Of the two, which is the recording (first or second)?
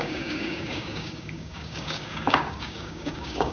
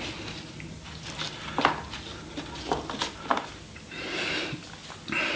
second